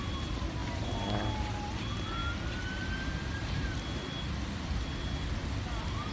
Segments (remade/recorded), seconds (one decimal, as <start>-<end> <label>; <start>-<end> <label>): 0.0-6.1 recorded